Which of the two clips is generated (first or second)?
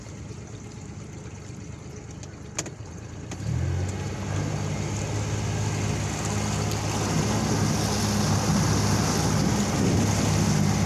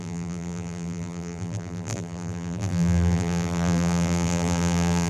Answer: second